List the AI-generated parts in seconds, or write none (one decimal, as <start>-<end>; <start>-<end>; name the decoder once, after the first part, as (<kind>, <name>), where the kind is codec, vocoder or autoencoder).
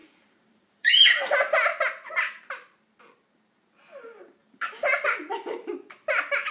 0.0-0.9 (vocoder, BigVGAN v2); 4.4-5.2